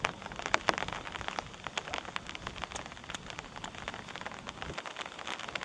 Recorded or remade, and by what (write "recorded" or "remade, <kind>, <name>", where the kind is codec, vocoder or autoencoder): recorded